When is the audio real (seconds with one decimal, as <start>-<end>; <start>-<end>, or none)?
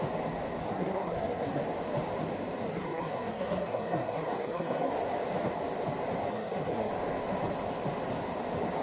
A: 0.0-0.6; 1.6-2.7; 4.9-6.3; 6.9-8.8